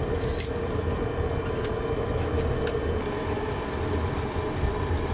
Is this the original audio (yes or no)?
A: yes